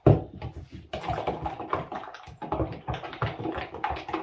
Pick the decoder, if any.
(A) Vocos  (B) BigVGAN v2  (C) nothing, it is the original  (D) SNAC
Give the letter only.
C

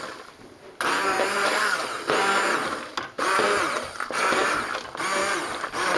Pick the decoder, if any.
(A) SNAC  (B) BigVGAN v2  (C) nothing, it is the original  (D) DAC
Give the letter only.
C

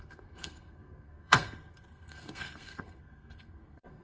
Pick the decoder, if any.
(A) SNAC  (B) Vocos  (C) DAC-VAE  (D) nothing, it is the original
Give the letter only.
A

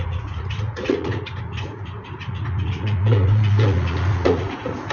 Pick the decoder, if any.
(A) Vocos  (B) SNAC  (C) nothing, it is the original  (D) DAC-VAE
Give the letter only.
A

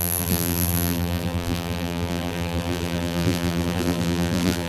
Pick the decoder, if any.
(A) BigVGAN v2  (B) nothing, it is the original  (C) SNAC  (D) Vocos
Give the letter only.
A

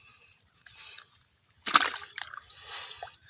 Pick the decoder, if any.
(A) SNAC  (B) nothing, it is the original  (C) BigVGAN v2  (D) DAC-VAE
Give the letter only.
B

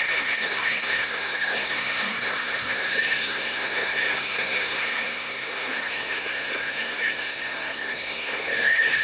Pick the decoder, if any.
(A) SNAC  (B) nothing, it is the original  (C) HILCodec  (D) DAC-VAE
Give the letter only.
A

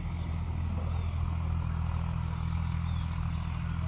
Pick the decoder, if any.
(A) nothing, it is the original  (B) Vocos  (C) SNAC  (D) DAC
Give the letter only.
A